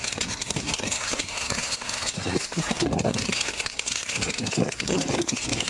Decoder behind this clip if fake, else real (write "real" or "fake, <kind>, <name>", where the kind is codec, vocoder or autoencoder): fake, codec, SNAC